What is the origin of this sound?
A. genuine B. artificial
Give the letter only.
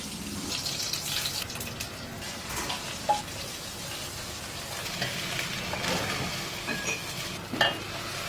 A